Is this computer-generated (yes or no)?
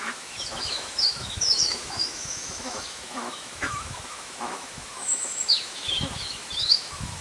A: yes